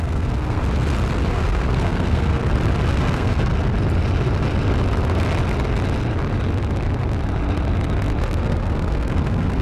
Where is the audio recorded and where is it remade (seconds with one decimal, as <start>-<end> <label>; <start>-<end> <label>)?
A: 0.0-0.6 remade; 0.6-1.3 recorded; 1.3-2.4 remade; 2.4-2.9 recorded; 2.9-3.5 remade; 3.5-8.2 recorded; 8.2-9.6 remade